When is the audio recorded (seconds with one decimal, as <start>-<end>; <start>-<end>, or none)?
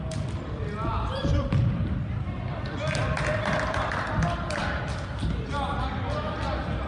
0.0-1.2; 1.9-3.0; 4.1-6.9